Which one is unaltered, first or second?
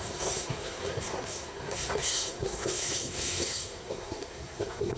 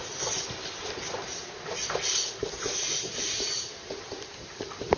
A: second